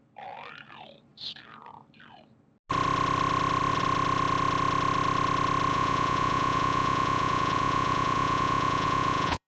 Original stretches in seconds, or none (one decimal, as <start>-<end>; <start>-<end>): 0.0-5.7

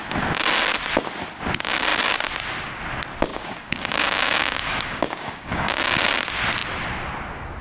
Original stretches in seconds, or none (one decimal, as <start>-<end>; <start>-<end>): 0.0-3.3; 6.1-7.6

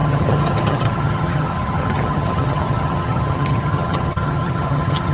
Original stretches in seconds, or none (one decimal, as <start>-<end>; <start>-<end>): none